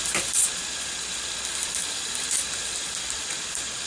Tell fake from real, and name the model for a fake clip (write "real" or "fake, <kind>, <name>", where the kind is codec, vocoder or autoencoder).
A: fake, vocoder, BigVGAN v2